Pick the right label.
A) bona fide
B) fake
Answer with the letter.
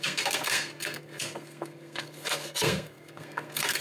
B